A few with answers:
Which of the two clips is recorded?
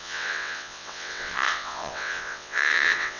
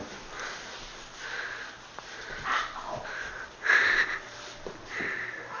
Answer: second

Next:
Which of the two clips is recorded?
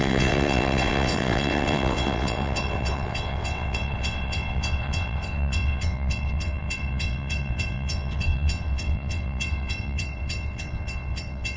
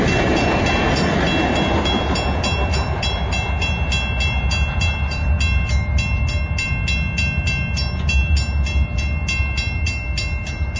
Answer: second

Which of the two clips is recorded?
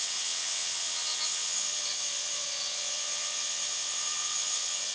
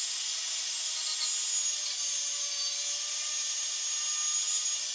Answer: second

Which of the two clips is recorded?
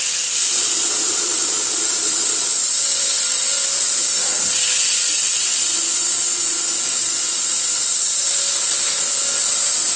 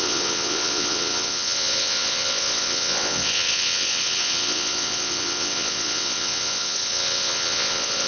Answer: first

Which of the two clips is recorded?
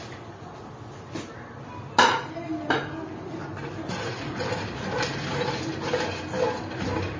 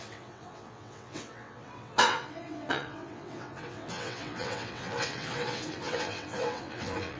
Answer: first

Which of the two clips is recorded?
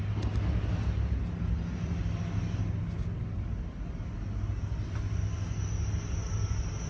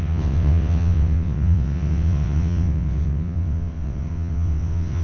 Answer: first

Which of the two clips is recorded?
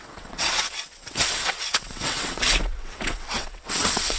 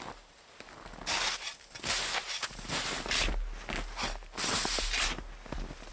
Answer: second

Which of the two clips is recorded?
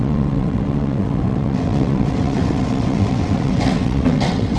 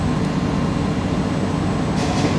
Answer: second